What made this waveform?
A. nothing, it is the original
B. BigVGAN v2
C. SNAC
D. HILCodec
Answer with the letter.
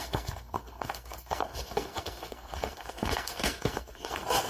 C